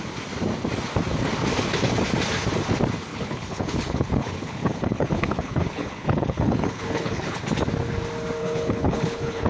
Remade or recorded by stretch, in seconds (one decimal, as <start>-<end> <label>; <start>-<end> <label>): 0.0-3.1 recorded; 3.1-7.4 remade; 7.4-8.4 recorded; 8.4-9.5 remade